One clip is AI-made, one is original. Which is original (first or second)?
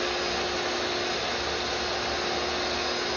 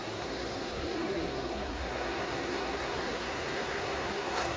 first